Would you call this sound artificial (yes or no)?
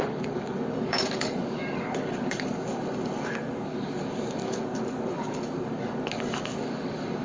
yes